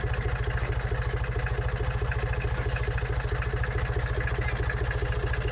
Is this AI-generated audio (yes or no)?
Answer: no